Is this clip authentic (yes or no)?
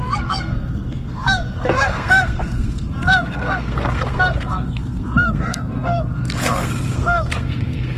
no